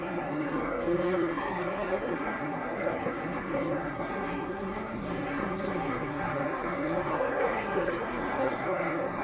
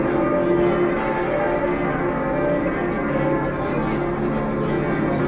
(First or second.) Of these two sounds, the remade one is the first